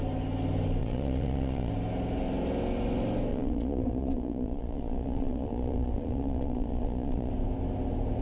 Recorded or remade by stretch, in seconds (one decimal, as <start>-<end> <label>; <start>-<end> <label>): 0.0-0.8 recorded; 0.8-1.7 remade; 1.7-3.3 recorded; 3.3-7.3 remade; 7.3-8.2 recorded

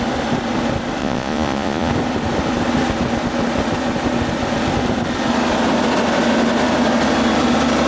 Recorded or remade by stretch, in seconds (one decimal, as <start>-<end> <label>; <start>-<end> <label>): 0.0-1.0 recorded; 1.0-1.9 remade; 1.9-7.9 recorded

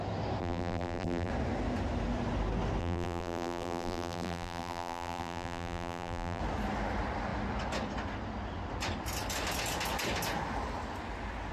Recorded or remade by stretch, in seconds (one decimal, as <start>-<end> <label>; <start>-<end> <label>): 0.0-0.4 recorded; 0.4-1.3 remade; 1.3-2.8 recorded; 2.8-6.4 remade; 6.4-11.5 recorded

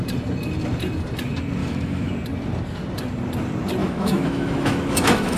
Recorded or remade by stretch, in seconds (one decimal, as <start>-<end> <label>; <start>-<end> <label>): 0.0-1.6 recorded; 1.6-2.1 remade; 2.1-3.8 recorded; 3.8-5.4 remade

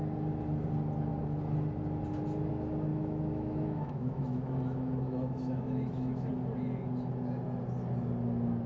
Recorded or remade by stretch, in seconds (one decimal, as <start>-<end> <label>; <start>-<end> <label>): 0.0-2.9 recorded; 2.9-6.3 remade; 6.3-8.7 recorded

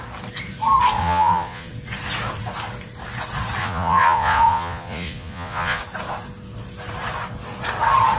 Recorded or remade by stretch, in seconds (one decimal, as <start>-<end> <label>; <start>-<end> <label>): 0.0-1.0 recorded; 1.0-1.7 remade; 1.7-3.6 recorded; 3.6-5.8 remade; 5.8-8.2 recorded